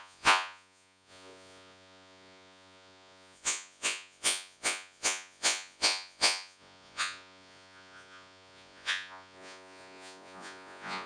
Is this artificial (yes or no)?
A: yes